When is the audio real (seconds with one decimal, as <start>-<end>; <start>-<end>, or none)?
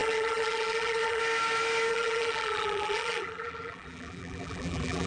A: 1.2-1.9